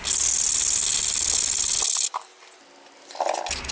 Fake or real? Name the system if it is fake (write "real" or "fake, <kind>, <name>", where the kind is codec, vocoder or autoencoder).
real